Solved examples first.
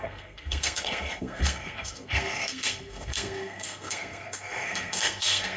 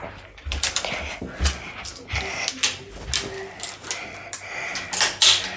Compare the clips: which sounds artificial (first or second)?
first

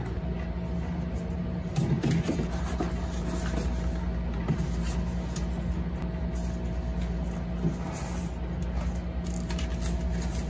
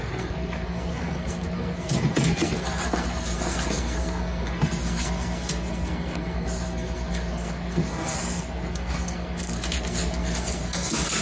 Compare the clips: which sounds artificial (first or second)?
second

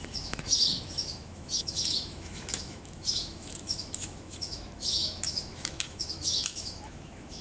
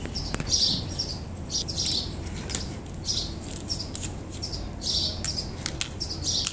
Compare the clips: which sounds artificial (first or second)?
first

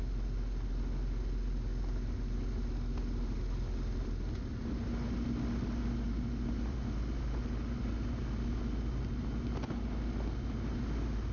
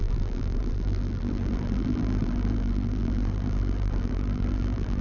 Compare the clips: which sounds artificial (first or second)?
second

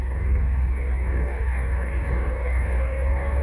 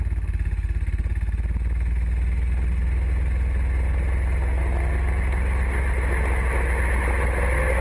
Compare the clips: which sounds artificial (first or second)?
first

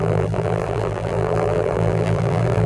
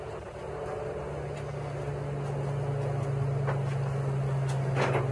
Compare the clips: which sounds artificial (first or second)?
first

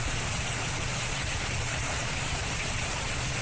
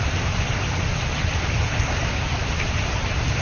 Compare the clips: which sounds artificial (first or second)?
first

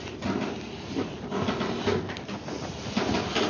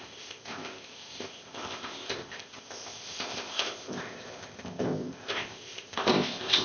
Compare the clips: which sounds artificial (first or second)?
second